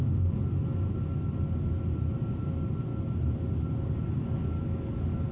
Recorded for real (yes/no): yes